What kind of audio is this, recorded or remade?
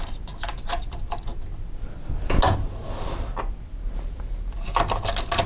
recorded